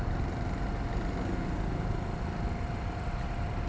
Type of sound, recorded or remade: recorded